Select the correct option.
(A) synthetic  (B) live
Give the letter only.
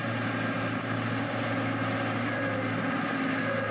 B